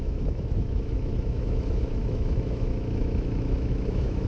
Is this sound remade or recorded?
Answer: remade